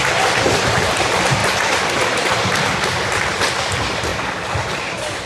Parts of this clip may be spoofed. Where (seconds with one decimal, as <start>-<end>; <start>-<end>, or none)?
none